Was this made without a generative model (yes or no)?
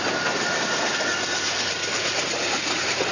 yes